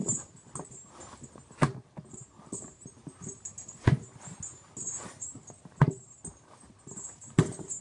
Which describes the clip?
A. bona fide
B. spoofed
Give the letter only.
A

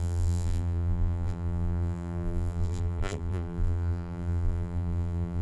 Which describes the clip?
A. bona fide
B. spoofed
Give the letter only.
B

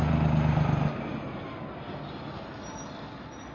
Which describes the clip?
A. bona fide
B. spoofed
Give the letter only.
A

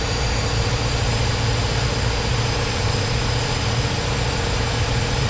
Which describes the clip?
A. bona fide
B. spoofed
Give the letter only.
A